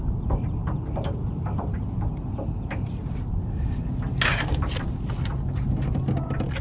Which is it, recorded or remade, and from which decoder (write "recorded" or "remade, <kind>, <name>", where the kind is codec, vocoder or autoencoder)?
recorded